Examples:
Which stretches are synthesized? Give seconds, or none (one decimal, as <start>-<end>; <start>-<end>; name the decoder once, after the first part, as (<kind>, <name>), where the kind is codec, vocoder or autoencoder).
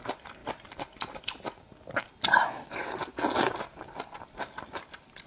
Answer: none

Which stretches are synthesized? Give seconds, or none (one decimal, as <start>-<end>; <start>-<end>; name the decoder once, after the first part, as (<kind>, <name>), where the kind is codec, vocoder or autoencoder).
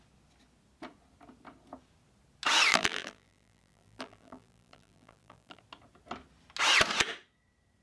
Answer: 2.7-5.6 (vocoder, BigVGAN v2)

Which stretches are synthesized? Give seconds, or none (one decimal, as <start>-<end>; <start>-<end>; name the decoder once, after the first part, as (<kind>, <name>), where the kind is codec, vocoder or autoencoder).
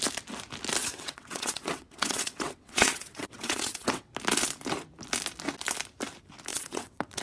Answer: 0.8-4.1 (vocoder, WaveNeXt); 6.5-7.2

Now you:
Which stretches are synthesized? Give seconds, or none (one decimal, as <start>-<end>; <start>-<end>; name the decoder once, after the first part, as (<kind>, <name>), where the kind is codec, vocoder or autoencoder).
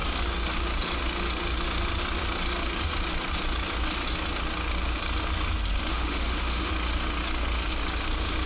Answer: 5.9-6.7 (autoencoder, DAC-VAE)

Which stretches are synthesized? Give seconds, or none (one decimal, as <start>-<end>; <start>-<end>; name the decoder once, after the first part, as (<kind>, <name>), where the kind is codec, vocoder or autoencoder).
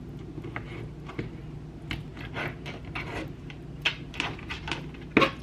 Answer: none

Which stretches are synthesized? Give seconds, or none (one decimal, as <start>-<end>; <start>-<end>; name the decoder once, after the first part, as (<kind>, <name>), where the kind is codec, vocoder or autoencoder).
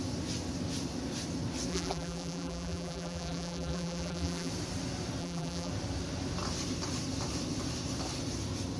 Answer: 1.7-4.5 (vocoder, BigVGAN v2); 5.2-5.7